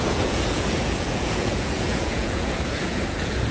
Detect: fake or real fake